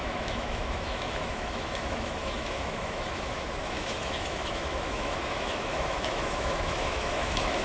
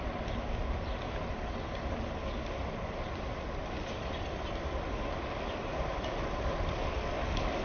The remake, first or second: first